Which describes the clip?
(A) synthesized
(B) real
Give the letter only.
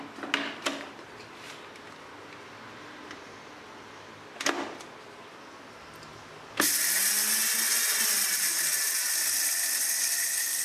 B